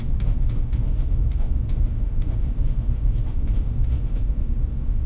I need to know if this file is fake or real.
fake